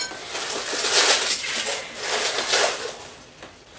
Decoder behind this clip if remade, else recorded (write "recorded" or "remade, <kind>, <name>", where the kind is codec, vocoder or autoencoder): recorded